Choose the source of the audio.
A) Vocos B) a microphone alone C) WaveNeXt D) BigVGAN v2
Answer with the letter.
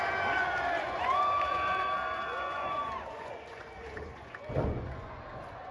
A